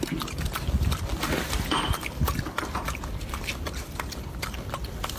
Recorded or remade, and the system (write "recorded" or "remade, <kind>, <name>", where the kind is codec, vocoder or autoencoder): recorded